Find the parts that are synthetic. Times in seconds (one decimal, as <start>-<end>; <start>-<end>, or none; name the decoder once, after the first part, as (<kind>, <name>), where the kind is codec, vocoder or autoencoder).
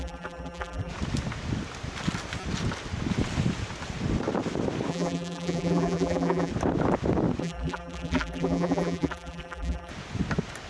0.0-0.9 (vocoder, BigVGAN v2); 4.9-6.5; 7.4-9.9